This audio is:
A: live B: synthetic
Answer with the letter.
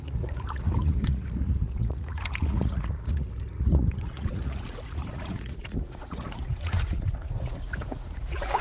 B